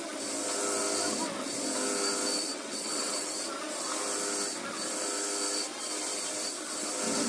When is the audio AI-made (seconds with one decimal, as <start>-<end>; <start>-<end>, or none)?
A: 2.5-3.3